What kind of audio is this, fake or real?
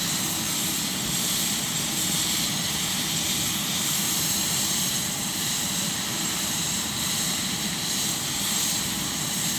fake